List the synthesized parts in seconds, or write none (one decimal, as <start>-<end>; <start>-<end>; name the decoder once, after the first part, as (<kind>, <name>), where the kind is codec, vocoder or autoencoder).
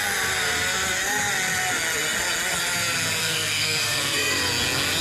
3.2-4.4 (codec, SNAC)